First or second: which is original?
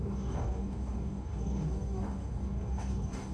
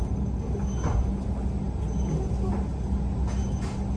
second